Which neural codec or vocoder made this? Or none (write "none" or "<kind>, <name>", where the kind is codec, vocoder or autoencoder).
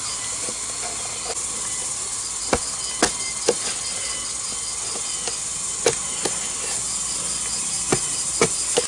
none